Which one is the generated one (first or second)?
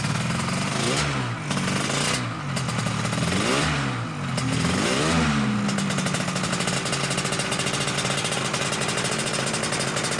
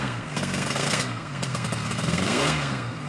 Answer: second